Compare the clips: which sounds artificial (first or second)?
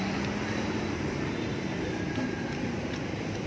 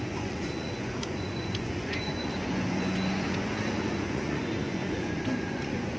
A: second